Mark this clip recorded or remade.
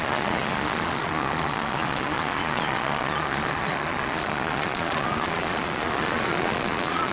remade